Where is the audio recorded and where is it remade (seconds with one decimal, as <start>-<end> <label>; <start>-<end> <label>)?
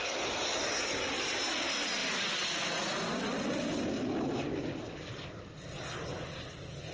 0.0-6.9 recorded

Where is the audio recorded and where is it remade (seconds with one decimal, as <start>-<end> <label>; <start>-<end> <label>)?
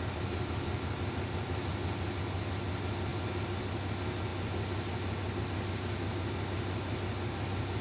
0.0-7.8 recorded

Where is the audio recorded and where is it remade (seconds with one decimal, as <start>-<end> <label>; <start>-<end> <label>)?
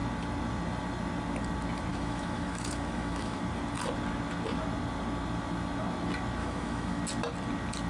0.0-1.9 recorded; 1.9-3.4 remade; 3.4-6.4 recorded; 6.4-7.0 remade; 7.0-7.9 recorded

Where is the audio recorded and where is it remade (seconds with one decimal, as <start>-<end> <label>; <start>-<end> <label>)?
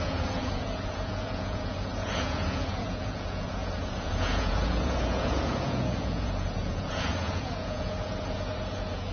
0.0-9.1 remade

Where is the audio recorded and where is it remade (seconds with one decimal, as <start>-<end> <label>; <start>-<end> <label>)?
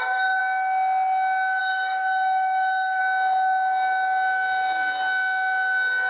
0.0-0.4 remade; 0.4-1.6 recorded; 1.6-3.0 remade; 3.0-6.1 recorded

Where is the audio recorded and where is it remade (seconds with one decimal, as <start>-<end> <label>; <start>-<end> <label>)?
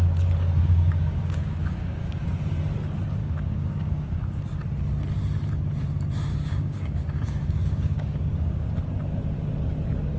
0.0-0.6 recorded; 0.6-2.2 remade; 2.2-3.2 recorded; 3.2-4.4 remade; 4.4-6.3 recorded; 6.3-8.7 remade; 8.7-10.2 recorded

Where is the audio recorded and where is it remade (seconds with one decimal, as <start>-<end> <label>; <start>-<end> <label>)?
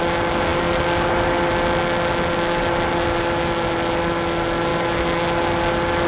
0.0-6.1 recorded